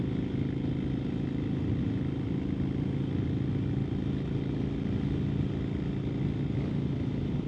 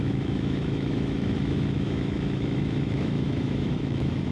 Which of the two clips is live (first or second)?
first